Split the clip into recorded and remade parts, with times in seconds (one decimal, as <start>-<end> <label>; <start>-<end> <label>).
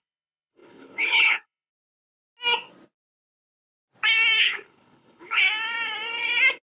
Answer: 0.0-1.7 remade; 1.7-4.4 recorded; 4.4-5.4 remade; 5.4-6.8 recorded